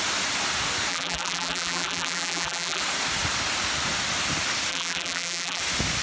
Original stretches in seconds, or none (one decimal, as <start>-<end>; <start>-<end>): 0.0-0.9; 2.8-4.7; 5.6-6.0